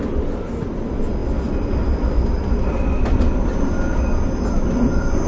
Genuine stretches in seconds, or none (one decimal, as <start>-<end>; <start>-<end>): 0.0-5.3